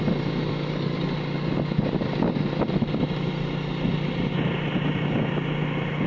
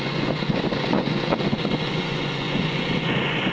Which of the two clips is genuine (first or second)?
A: first